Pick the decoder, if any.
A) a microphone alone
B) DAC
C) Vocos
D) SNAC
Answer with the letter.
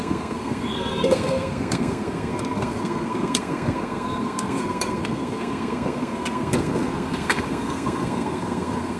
D